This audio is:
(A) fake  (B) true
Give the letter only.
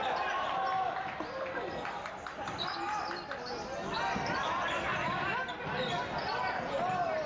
B